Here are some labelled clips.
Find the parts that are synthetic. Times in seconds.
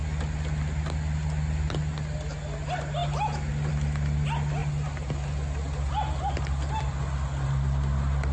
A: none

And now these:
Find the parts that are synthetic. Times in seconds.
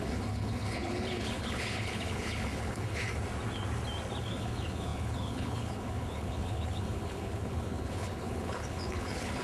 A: 0.0-3.1 (codec, HILCodec); 4.2-9.4